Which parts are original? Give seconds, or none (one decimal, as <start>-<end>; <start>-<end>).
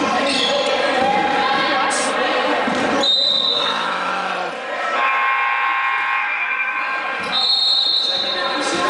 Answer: 0.0-3.5; 4.3-6.2; 6.8-8.9